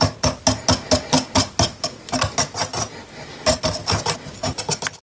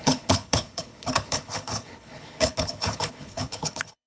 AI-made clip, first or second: second